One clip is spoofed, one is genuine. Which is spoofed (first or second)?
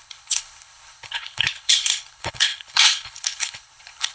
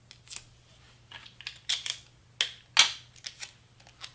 first